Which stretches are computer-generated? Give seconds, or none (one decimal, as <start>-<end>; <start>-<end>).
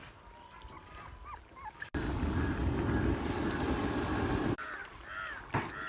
none